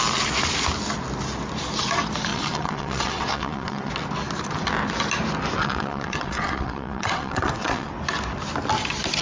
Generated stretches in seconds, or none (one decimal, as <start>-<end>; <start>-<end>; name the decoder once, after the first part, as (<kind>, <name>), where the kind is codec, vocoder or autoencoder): 2.3-3.9 (vocoder, WaveNeXt); 5.6-7.9